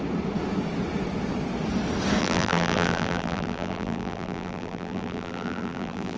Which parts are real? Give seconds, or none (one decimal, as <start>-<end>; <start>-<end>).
0.0-2.2